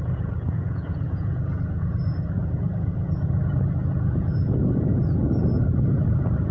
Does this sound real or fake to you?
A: fake